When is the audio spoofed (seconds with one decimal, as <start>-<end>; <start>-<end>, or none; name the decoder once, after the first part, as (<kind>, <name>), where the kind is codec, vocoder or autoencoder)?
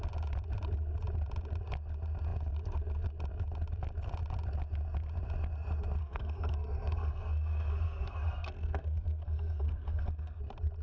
6.0-10.4 (codec, SNAC)